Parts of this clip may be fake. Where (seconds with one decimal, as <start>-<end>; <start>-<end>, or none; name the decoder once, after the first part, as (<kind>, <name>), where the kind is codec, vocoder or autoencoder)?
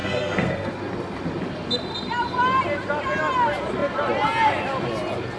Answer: 0.0-0.7 (codec, SNAC)